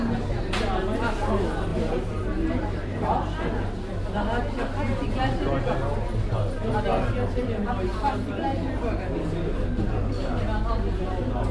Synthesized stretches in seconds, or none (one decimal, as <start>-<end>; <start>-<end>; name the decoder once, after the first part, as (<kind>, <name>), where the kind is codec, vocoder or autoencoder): 1.7-3.1 (vocoder, BigVGAN v2); 7.9-8.8